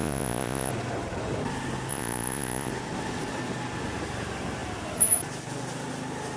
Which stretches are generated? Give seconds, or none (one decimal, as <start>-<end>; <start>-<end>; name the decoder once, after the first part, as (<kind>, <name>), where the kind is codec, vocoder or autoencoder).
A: 0.0-0.7 (vocoder, Vocos); 1.9-2.7